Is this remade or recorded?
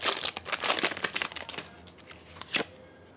recorded